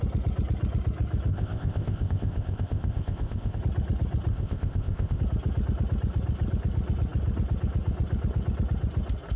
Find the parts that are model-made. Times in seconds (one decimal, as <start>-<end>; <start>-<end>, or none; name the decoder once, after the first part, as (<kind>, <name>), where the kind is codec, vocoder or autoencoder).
1.3-3.6 (codec, ZipCodec); 4.3-5.2